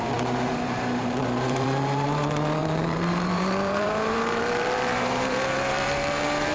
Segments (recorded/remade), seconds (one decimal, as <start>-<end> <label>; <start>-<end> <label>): 0.0-6.5 remade